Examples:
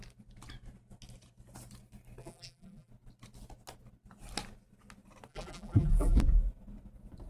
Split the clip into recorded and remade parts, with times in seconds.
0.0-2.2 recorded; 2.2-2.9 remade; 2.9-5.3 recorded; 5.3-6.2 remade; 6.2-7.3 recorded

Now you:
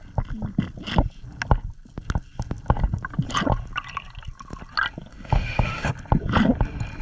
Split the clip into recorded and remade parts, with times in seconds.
0.0-5.1 recorded; 5.1-5.9 remade; 5.9-7.0 recorded

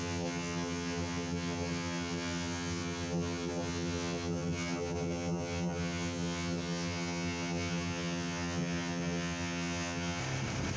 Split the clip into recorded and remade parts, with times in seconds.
0.0-10.2 remade; 10.2-10.8 recorded

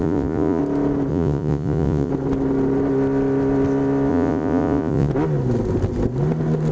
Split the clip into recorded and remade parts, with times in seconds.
0.0-0.6 remade; 0.6-1.1 recorded; 1.1-2.1 remade; 2.1-4.1 recorded; 4.1-5.1 remade; 5.1-6.7 recorded

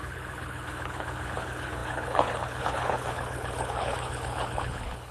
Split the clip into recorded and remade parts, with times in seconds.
0.0-5.1 remade

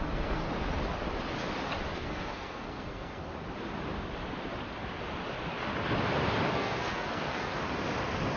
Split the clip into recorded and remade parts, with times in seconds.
0.0-0.4 remade; 0.4-2.0 recorded; 2.0-3.3 remade; 3.3-6.5 recorded; 6.5-7.5 remade; 7.5-8.4 recorded